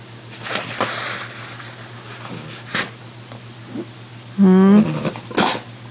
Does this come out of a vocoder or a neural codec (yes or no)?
no